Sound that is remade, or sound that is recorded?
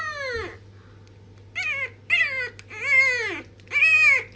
recorded